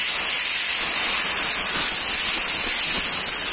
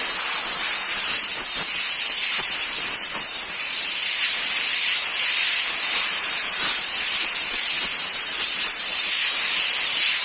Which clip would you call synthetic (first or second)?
second